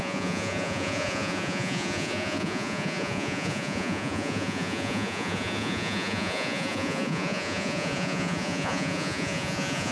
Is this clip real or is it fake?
fake